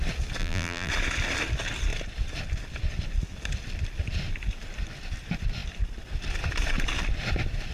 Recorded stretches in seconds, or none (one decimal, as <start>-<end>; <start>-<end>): 0.0-0.4; 0.9-7.7